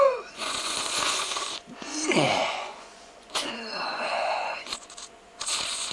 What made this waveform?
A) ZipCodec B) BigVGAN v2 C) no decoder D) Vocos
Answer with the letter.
D